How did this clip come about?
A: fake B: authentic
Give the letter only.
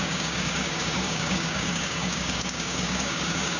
A